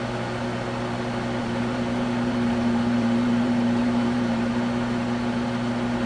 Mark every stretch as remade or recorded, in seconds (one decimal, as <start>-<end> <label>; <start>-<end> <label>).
0.0-1.4 recorded; 1.4-4.5 remade; 4.5-6.1 recorded